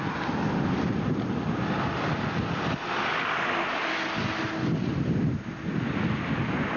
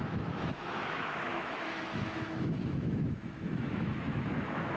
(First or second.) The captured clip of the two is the first